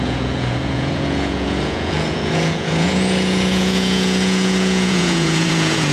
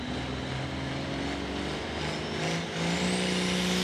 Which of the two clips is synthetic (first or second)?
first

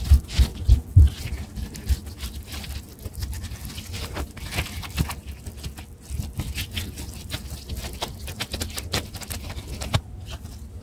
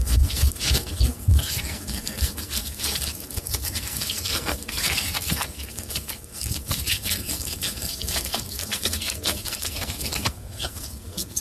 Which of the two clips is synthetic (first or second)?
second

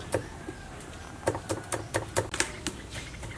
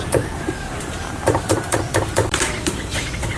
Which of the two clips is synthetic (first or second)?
second